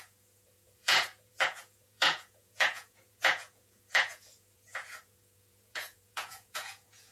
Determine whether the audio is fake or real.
fake